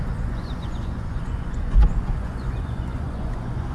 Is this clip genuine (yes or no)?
no